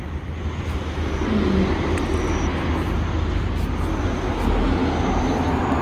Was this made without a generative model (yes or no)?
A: yes